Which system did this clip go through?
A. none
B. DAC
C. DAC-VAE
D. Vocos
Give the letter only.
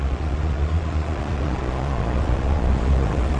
D